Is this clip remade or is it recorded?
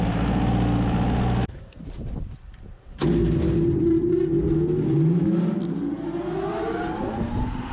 recorded